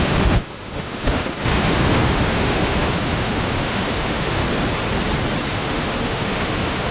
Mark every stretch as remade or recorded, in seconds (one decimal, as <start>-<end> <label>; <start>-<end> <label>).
0.0-4.4 remade; 4.4-5.5 recorded; 5.5-6.9 remade

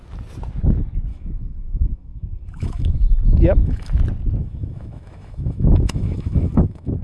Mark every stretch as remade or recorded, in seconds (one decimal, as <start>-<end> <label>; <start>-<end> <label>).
0.0-1.1 recorded; 1.1-3.9 remade; 3.9-4.4 recorded; 4.4-7.0 remade